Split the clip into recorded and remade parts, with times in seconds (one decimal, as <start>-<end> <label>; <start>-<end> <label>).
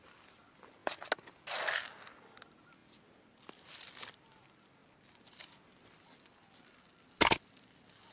0.0-0.8 remade; 0.8-1.6 recorded; 1.6-2.8 remade; 2.8-4.1 recorded; 4.1-4.8 remade; 4.8-7.4 recorded; 7.4-8.1 remade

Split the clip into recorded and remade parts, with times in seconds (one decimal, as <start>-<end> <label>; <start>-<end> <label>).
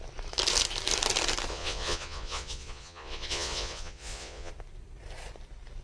0.0-1.5 recorded; 1.5-4.5 remade; 4.5-5.8 recorded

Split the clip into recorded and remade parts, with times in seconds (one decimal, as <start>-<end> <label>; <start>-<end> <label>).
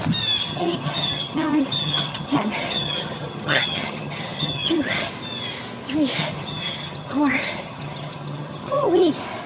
0.0-0.4 recorded; 0.4-5.1 remade; 5.1-6.2 recorded; 6.2-9.1 remade; 9.1-9.5 recorded